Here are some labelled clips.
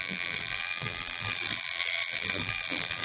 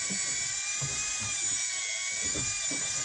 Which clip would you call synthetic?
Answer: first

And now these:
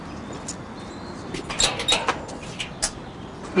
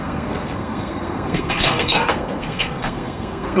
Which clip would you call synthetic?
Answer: second